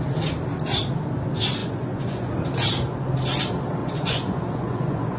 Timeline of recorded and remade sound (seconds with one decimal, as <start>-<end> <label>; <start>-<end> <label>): 0.0-1.6 recorded; 1.6-2.3 remade; 2.3-3.8 recorded; 3.8-5.2 remade